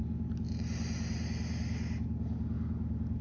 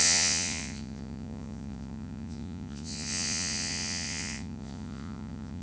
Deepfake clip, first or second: second